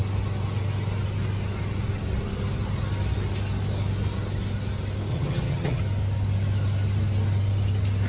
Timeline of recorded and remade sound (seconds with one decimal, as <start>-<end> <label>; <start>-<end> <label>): 0.0-5.1 recorded; 5.1-5.8 remade; 5.8-8.1 recorded